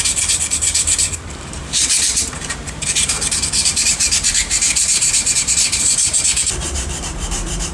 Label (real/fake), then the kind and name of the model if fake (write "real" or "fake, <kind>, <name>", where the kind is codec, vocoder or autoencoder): fake, vocoder, BigVGAN v2